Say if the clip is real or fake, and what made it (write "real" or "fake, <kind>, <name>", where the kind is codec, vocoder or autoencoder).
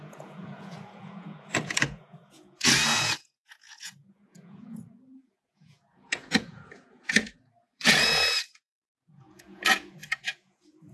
fake, vocoder, Vocos